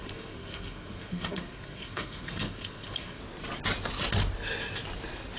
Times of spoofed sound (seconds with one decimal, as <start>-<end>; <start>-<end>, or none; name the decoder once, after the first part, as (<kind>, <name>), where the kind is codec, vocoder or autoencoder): 0.0-3.2 (codec, SNAC)